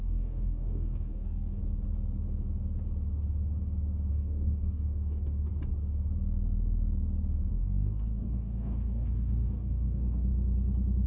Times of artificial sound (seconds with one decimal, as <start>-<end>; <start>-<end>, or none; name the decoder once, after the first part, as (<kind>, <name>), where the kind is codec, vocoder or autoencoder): 0.0-1.6 (codec, DAC); 4.1-5.5; 7.5-10.3